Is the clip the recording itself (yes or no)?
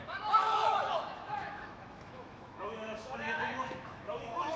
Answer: no